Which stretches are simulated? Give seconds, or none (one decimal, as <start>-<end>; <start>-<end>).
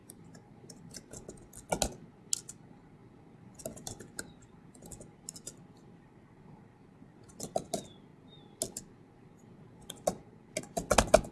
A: 0.0-0.8; 3.0-4.2